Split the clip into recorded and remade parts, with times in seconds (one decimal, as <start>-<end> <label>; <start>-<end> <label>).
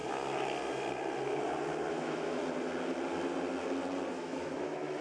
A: 0.0-1.9 recorded; 1.9-2.4 remade; 2.4-4.1 recorded; 4.1-5.0 remade